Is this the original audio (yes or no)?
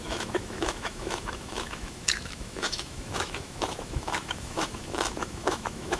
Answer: no